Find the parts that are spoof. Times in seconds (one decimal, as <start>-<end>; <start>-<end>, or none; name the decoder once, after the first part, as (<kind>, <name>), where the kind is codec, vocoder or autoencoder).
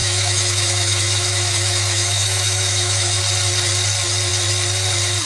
0.0-3.2 (autoencoder, DAC-VAE)